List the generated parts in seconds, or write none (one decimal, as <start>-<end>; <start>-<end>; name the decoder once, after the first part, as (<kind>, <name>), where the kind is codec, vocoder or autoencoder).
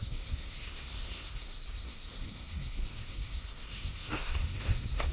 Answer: 0.0-5.1 (codec, SNAC)